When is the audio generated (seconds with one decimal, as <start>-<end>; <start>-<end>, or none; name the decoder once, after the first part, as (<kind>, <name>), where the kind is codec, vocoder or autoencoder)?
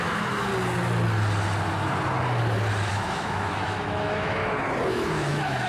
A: 0.0-0.5 (autoencoder, DAC-VAE); 2.9-4.4; 4.9-5.7